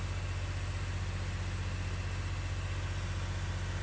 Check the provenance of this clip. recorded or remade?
recorded